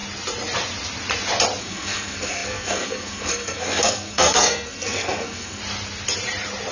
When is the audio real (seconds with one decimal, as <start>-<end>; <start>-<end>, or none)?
0.0-1.6; 5.6-6.7